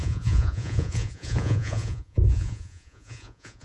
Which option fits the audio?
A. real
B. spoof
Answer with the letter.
B